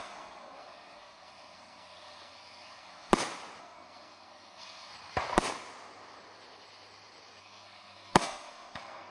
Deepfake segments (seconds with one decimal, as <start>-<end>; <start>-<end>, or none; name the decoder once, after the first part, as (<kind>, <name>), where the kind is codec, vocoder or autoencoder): 0.0-3.1 (codec, SNAC); 3.6-4.9; 7.4-9.1